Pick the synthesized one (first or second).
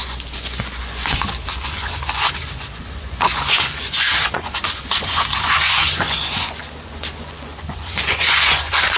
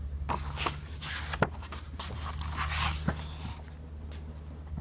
first